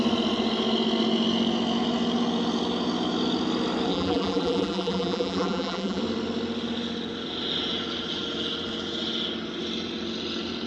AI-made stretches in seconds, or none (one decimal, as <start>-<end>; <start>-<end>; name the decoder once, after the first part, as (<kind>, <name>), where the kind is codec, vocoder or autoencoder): 3.9-6.0 (vocoder, BigVGAN v2)